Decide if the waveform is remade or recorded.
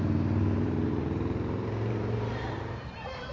remade